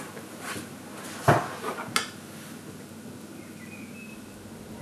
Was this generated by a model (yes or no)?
no